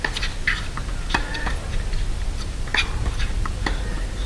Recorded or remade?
recorded